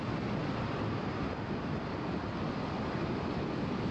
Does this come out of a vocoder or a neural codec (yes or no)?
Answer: yes